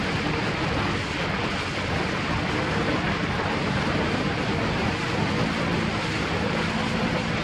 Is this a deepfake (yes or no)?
no